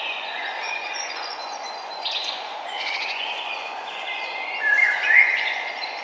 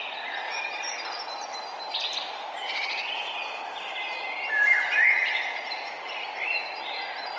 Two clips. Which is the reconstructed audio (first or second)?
first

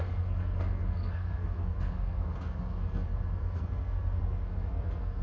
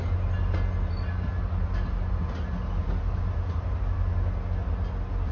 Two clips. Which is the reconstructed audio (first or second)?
first